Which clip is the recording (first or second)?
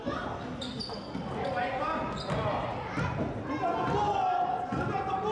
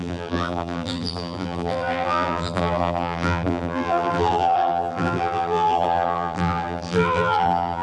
first